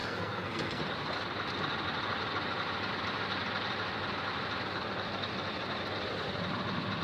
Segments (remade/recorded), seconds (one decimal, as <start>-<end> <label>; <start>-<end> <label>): 0.0-0.8 remade; 0.8-7.0 recorded